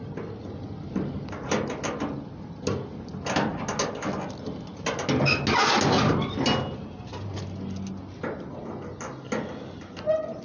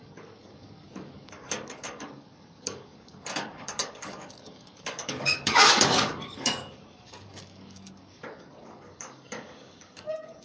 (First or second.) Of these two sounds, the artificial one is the second